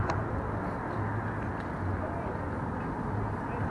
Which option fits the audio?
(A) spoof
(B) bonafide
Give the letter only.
B